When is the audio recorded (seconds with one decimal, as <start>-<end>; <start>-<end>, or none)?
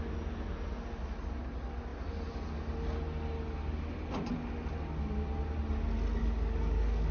0.0-6.2